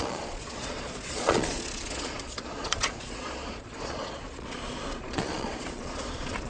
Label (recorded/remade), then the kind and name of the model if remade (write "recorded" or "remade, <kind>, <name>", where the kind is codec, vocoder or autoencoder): remade, vocoder, Vocos